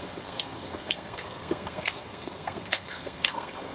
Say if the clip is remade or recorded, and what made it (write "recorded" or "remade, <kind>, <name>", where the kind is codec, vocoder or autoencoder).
remade, codec, SNAC